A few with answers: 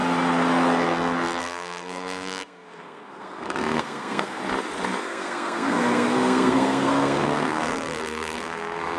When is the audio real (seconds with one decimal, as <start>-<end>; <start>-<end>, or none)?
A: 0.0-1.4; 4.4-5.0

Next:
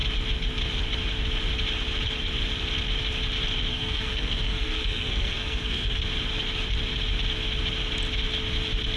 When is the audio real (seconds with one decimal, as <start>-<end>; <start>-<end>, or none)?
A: 0.0-3.7; 6.0-9.0

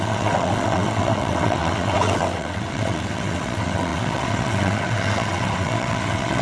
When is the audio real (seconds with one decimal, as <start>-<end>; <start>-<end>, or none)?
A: none